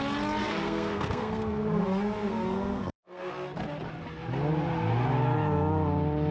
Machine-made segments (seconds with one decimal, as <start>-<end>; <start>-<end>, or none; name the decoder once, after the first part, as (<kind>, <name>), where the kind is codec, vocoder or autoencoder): 0.4-3.3 (codec, SNAC)